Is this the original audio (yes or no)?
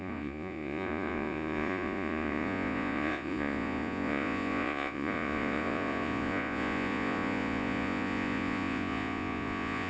no